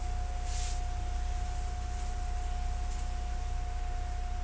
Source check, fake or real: real